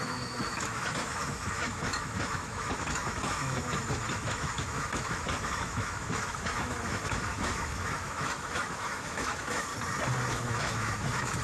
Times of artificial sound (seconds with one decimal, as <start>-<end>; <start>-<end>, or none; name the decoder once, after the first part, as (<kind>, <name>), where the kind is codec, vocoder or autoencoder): 0.0-9.7 (autoencoder, DAC-VAE); 10.3-11.4